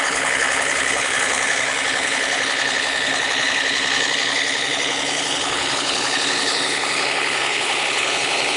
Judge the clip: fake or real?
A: fake